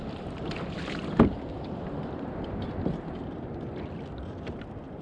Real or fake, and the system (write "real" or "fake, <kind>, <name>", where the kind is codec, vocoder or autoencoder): real